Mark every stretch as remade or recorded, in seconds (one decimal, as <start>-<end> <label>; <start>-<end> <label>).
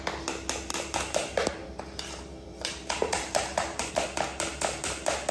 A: 0.0-0.7 recorded; 0.7-3.9 remade; 3.9-5.3 recorded